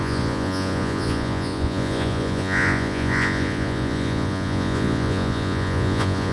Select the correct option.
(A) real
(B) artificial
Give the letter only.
B